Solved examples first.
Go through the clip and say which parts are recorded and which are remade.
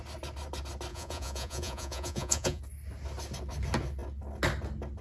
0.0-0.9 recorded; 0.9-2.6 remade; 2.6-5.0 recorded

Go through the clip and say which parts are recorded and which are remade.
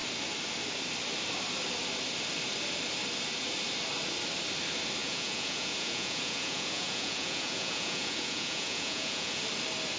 0.0-5.0 recorded; 5.0-9.4 remade; 9.4-10.0 recorded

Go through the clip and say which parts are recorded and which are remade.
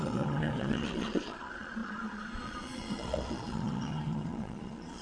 0.0-5.0 remade